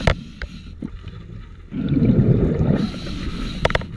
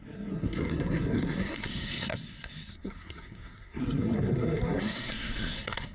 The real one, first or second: first